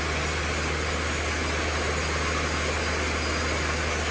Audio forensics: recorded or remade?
recorded